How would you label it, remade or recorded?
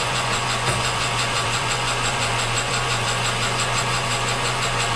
remade